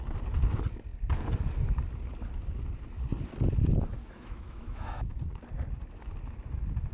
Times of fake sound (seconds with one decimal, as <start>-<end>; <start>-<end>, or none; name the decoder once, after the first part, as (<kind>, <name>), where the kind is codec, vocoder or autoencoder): 4.0-5.2 (autoencoder, DAC-VAE)